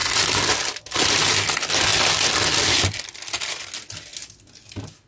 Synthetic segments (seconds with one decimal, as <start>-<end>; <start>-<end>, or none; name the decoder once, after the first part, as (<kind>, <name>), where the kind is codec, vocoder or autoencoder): none